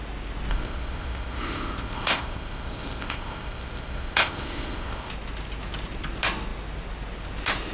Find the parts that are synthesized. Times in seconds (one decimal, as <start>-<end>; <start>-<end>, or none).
0.5-5.1